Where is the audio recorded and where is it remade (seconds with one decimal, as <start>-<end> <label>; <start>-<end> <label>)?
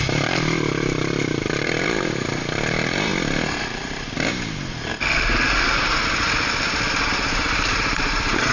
0.0-3.1 remade; 3.1-3.6 recorded; 3.6-4.9 remade; 4.9-7.1 recorded; 7.1-8.5 remade